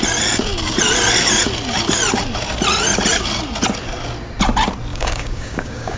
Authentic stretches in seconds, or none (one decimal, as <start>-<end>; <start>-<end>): 0.0-4.9